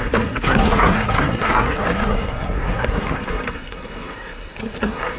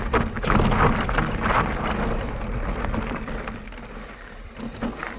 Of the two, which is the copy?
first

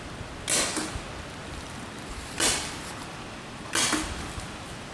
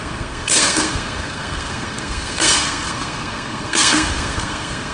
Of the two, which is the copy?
second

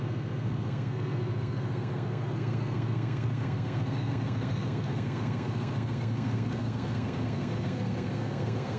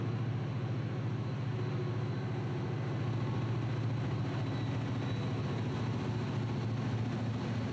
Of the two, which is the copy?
first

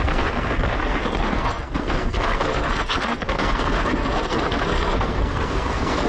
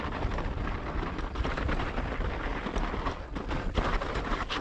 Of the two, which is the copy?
first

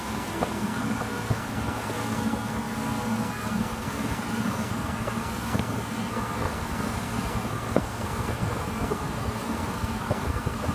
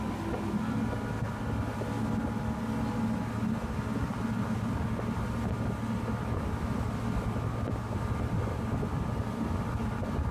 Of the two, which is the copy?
first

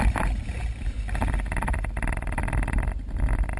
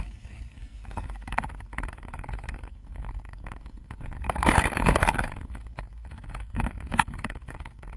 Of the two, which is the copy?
second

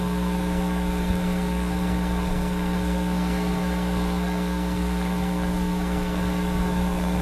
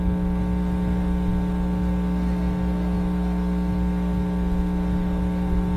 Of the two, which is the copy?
first